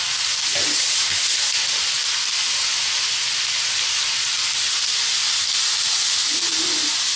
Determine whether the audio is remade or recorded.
recorded